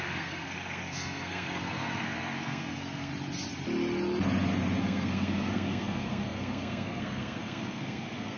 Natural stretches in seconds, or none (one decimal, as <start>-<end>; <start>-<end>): 3.1-4.8

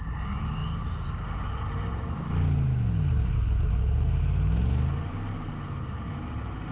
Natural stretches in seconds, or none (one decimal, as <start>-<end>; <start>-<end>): 0.0-6.7